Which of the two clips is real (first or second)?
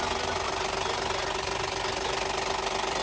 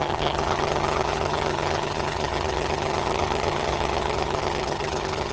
first